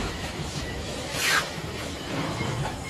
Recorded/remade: remade